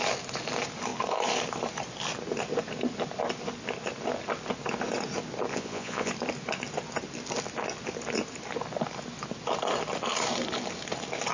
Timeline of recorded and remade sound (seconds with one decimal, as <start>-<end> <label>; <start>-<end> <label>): 0.0-5.5 recorded; 5.5-6.1 remade; 6.1-11.3 recorded

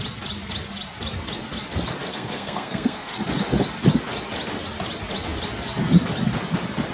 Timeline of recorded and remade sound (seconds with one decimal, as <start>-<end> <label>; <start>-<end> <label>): 0.0-2.1 recorded; 2.1-3.1 remade; 3.1-6.9 recorded

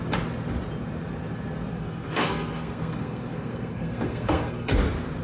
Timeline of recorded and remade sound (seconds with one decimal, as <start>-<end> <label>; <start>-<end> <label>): 0.0-1.7 recorded; 1.7-4.8 remade; 4.8-5.2 recorded

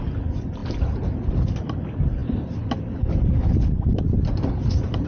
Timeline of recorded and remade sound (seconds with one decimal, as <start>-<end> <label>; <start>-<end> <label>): 0.0-5.1 recorded

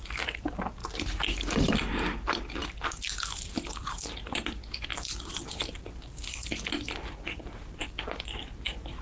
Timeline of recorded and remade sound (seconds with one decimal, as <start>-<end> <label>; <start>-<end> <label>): 0.0-9.0 recorded

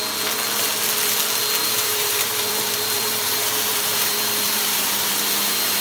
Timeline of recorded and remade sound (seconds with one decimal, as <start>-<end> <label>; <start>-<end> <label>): 0.0-1.6 recorded; 1.6-5.1 remade; 5.1-5.8 recorded